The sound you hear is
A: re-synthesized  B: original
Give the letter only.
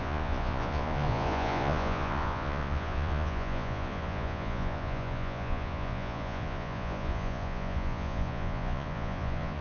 A